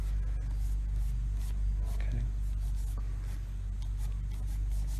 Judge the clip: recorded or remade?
recorded